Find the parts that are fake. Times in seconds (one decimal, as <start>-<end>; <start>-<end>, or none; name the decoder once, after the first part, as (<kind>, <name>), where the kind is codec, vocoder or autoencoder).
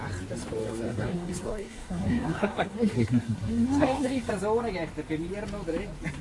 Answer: 0.6-4.3 (codec, SNAC)